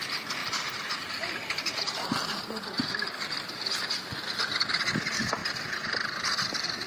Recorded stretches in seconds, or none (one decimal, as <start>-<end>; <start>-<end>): 0.0-0.4; 4.5-6.9